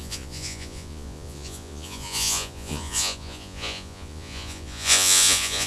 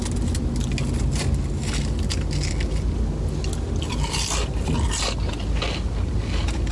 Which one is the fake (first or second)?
first